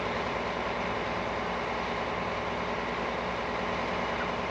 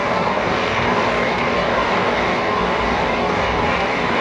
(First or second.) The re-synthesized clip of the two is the second